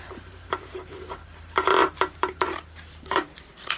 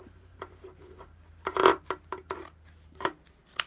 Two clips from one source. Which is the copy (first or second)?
first